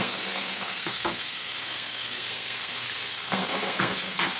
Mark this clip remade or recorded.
remade